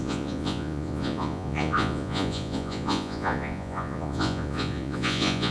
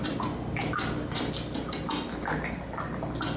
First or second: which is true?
second